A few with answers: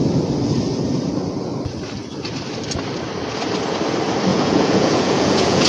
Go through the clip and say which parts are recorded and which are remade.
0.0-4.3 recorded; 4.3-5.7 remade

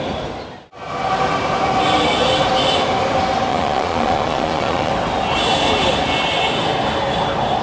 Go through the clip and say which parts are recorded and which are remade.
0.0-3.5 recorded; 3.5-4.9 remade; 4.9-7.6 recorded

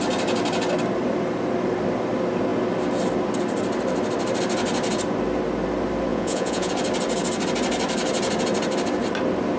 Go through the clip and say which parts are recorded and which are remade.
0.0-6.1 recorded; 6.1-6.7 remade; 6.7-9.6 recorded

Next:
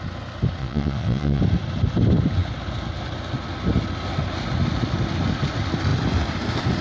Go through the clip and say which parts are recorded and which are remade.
0.0-0.6 recorded; 0.6-1.4 remade; 1.4-6.8 recorded

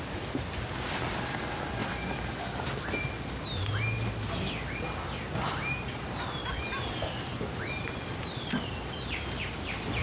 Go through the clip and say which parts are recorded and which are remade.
0.0-10.0 recorded